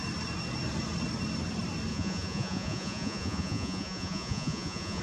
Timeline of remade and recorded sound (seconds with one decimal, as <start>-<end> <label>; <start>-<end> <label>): 0.0-1.9 recorded; 1.9-5.0 remade